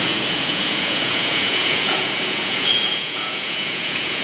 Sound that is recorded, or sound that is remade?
remade